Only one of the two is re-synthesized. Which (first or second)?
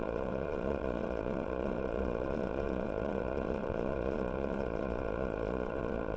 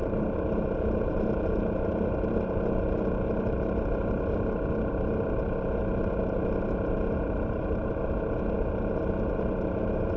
first